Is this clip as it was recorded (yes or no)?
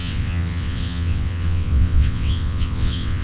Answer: no